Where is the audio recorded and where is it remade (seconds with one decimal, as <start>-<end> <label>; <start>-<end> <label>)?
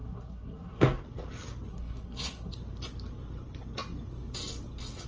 0.0-1.0 remade; 1.0-1.7 recorded; 1.7-2.5 remade; 2.5-5.1 recorded